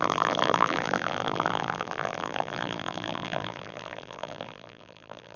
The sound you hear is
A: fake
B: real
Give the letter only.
A